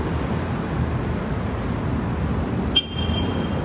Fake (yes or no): no